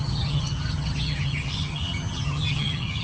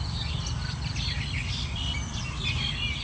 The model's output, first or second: first